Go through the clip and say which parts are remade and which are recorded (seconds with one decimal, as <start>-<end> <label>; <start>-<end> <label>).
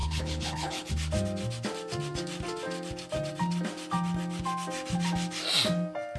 0.0-0.9 remade; 0.9-6.2 recorded